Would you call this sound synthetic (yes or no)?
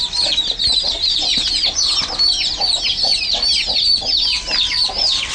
no